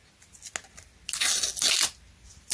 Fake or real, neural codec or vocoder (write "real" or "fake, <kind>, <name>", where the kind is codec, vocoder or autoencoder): real